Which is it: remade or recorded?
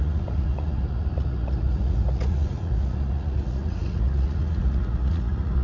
remade